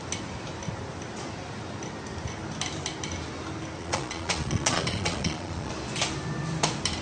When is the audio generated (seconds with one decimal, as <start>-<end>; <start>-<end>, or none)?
3.8-5.7

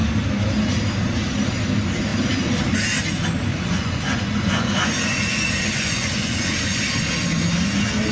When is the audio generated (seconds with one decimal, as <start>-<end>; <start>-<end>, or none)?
3.5-6.8

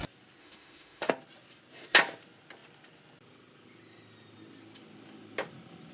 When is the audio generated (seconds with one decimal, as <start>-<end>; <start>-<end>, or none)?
0.4-1.1

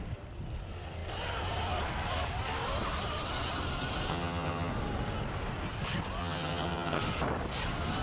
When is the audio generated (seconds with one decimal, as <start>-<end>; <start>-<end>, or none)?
4.1-4.7; 6.2-7.0

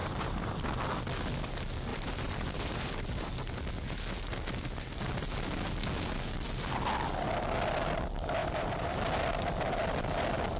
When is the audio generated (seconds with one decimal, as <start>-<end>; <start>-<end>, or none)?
0.0-0.5; 1.9-3.3; 8.4-9.0

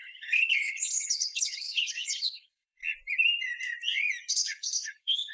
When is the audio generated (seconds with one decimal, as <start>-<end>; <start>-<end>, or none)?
0.0-2.8; 4.3-5.3

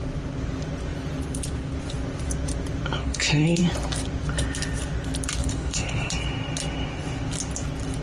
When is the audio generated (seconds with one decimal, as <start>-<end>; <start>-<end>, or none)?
2.9-3.6; 5.4-6.1

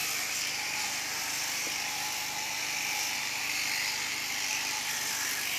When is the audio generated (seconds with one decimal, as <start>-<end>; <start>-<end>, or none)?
none